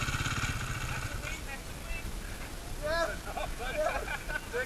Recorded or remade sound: recorded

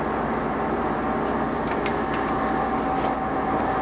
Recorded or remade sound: recorded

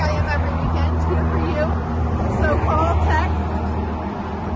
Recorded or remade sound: recorded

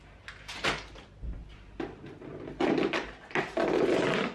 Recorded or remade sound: recorded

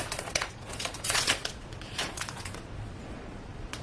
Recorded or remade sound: remade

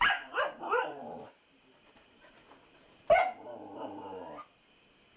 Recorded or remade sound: remade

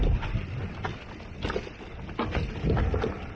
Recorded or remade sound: recorded